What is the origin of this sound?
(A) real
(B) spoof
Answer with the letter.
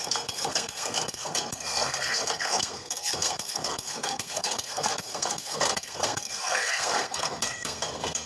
B